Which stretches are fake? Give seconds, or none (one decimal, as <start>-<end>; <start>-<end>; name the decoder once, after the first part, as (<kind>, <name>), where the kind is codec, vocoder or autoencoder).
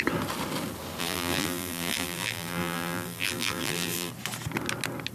1.0-4.1 (vocoder, BigVGAN v2)